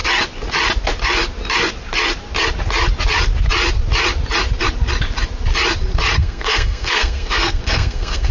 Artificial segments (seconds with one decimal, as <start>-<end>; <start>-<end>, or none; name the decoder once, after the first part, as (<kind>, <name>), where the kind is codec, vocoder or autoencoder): 6.2-8.3 (codec, SNAC)